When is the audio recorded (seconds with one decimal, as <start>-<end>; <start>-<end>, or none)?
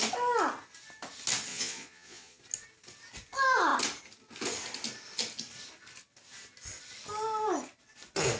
0.0-1.5; 2.4-8.4